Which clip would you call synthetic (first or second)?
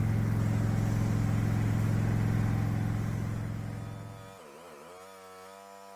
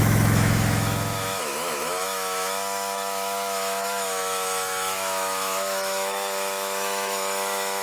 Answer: second